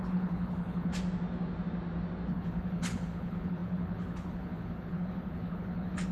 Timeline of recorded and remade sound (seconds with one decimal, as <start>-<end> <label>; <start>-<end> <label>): 0.0-0.9 remade; 0.9-2.3 recorded; 2.3-6.1 remade